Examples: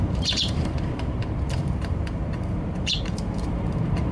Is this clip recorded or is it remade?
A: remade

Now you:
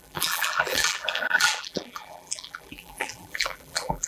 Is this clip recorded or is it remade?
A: remade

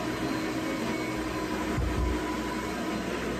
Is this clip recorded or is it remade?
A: recorded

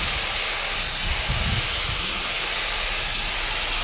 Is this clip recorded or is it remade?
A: recorded